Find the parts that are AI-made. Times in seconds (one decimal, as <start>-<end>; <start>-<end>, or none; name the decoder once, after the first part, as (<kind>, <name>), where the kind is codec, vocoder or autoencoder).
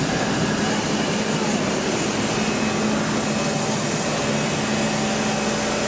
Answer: none